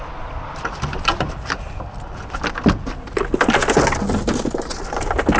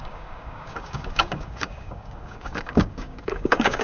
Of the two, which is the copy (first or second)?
second